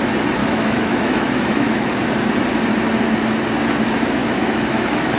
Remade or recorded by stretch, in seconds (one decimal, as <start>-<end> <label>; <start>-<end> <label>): 0.0-0.4 recorded; 0.4-2.0 remade; 2.0-4.2 recorded; 4.2-5.2 remade